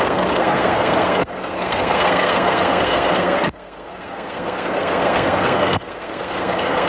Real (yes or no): no